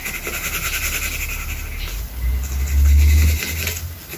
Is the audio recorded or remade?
recorded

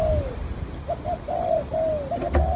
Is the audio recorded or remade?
recorded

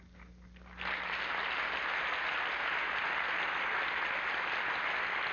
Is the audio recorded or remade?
recorded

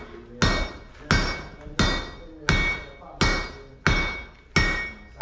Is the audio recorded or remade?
recorded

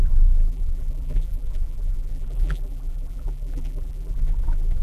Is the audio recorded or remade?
remade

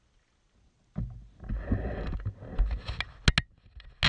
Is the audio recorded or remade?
recorded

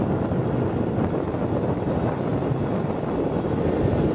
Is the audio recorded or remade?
recorded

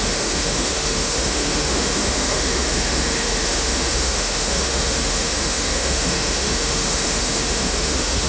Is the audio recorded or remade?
remade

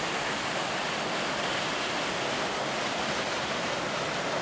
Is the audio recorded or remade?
recorded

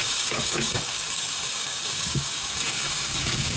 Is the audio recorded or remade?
remade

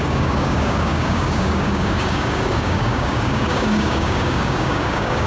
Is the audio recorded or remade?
remade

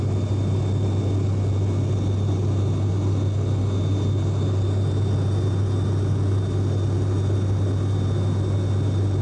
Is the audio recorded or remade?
recorded